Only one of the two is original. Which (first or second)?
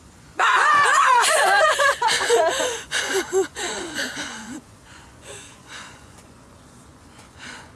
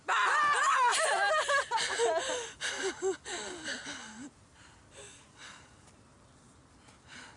second